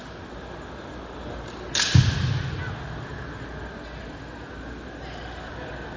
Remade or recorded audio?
recorded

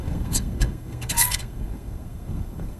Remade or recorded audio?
remade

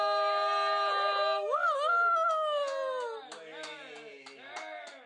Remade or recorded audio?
recorded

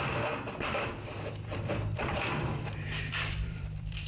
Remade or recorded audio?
remade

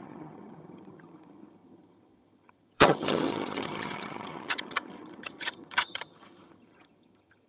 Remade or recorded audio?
remade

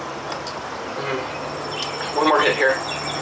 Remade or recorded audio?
recorded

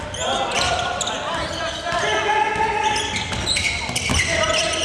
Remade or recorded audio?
recorded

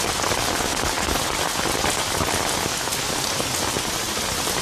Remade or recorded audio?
recorded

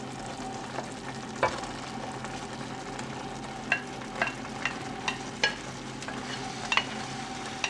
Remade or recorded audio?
recorded